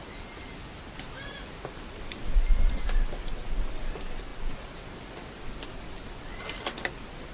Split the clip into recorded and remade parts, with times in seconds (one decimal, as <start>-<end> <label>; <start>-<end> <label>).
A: 0.0-7.3 recorded